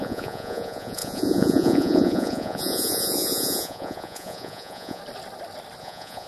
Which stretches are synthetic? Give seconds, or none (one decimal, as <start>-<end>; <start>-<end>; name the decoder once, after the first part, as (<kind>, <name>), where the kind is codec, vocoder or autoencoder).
0.0-5.0 (vocoder, Vocos); 5.8-6.3